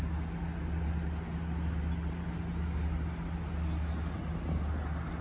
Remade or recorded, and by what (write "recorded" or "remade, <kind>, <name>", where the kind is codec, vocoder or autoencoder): recorded